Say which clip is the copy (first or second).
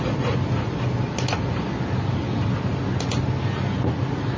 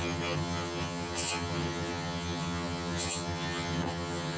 second